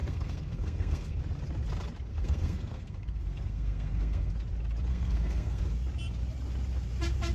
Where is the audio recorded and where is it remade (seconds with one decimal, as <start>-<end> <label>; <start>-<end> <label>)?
0.0-1.2 remade; 1.2-2.1 recorded; 2.1-4.3 remade; 4.3-4.9 recorded; 4.9-5.6 remade; 5.6-7.3 recorded